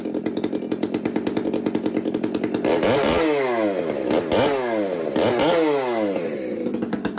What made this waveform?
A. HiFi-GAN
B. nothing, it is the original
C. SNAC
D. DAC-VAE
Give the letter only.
B